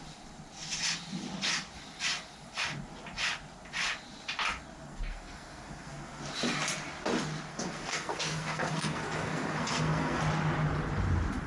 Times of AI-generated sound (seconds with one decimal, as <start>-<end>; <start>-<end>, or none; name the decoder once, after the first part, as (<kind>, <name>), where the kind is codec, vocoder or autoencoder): 4.9-6.2 (codec, SNAC); 7.5-10.2